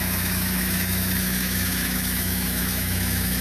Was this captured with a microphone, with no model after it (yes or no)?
no